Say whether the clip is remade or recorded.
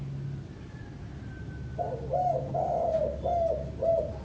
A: recorded